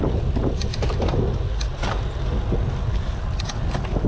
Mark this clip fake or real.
real